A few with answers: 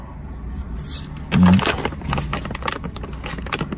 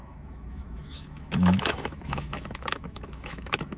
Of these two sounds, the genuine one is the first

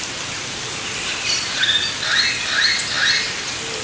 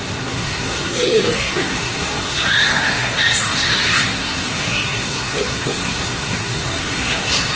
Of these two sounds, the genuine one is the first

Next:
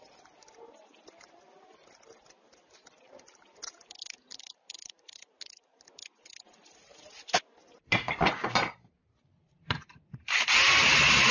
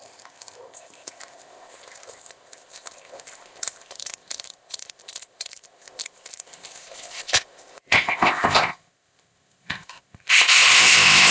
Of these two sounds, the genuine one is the first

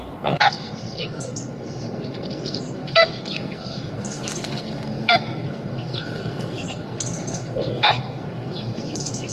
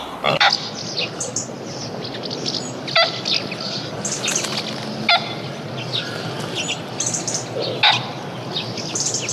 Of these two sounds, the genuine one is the second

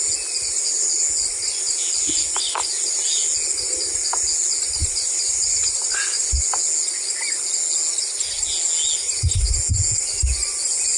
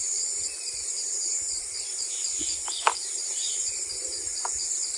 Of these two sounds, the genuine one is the first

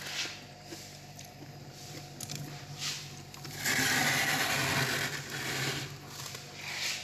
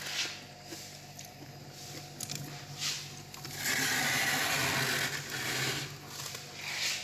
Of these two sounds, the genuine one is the second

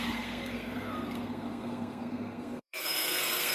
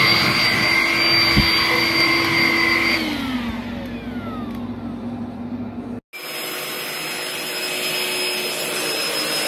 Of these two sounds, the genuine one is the second